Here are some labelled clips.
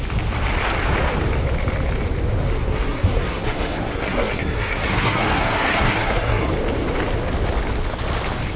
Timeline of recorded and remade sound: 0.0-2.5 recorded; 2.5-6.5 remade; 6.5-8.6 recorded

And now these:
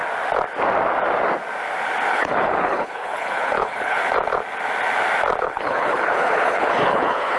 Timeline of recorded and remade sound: 0.0-2.1 recorded; 2.1-4.0 remade; 4.0-5.4 recorded; 5.4-7.4 remade

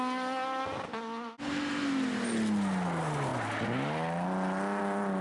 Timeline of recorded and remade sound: 0.0-5.2 recorded

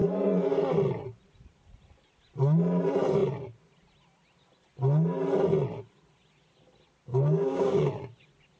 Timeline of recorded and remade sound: 0.0-7.1 recorded; 7.1-7.9 remade; 7.9-8.6 recorded

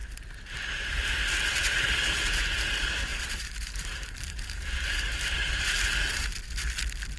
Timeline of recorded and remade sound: 0.0-3.1 recorded; 3.1-5.9 remade; 5.9-7.2 recorded

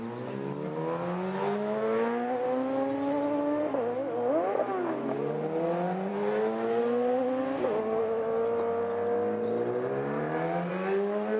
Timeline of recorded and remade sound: 0.0-11.4 recorded